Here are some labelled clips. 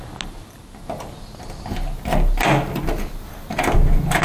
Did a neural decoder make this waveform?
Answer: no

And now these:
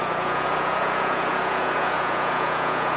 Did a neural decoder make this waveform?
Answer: yes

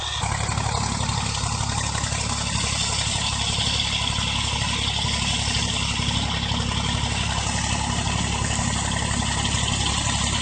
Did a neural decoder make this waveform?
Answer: no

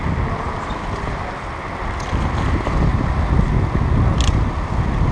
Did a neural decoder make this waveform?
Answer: no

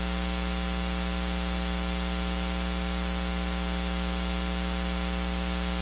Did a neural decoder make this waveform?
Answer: no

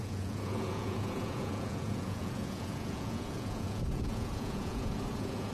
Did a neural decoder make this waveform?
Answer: yes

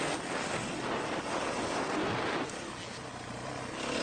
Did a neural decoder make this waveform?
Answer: no